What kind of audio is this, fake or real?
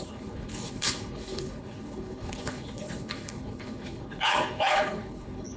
fake